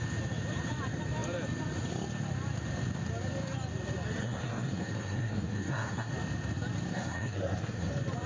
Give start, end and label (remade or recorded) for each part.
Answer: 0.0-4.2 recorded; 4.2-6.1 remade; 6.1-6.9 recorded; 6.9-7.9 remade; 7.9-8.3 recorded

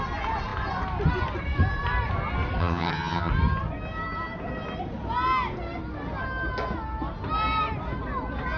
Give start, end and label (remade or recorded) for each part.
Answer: 0.0-2.6 recorded; 2.6-3.3 remade; 3.3-8.6 recorded

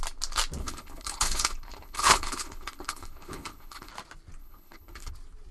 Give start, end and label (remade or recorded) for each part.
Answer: 0.0-0.6 recorded; 0.6-3.9 remade; 3.9-4.4 recorded; 4.4-5.1 remade; 5.1-5.5 recorded

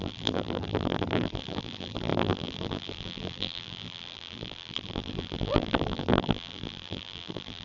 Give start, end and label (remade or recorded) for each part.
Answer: 0.0-7.6 remade

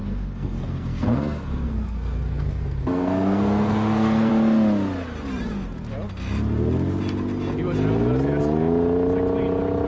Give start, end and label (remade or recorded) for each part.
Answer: 0.0-4.3 remade; 4.3-9.9 recorded

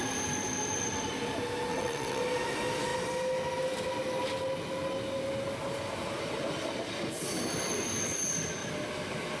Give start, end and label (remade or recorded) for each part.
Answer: 0.0-1.7 recorded; 1.7-2.2 remade; 2.2-9.4 recorded